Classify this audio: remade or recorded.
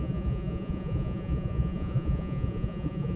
remade